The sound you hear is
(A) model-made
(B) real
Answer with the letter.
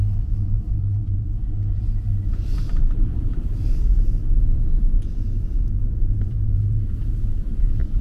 A